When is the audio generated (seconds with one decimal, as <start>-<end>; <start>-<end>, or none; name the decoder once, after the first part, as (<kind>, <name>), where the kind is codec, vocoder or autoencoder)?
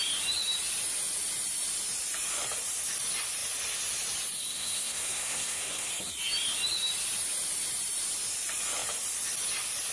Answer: 4.4-5.9 (codec, SNAC)